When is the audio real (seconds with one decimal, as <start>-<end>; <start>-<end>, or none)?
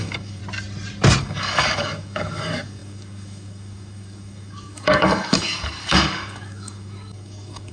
0.4-1.2